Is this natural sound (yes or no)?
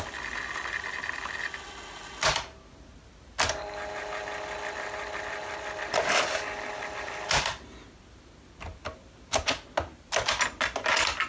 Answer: yes